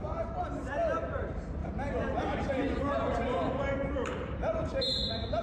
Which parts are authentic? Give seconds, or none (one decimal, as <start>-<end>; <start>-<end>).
0.5-1.6; 4.8-5.4